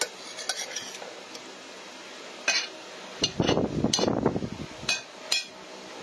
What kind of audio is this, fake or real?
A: real